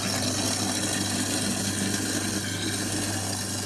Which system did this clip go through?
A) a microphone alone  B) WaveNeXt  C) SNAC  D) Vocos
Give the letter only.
A